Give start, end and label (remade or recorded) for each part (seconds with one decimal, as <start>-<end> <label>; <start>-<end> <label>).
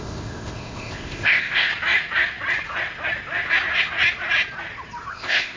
0.0-1.7 remade; 1.7-5.1 recorded; 5.1-5.6 remade